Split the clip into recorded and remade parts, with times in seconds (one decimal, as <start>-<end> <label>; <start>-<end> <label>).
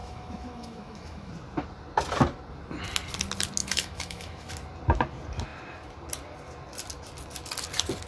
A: 0.0-1.3 remade; 1.3-3.6 recorded; 3.6-4.5 remade; 4.5-8.1 recorded